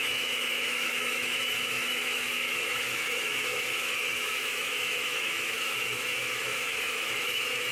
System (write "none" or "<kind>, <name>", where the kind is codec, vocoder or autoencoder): autoencoder, DAC-VAE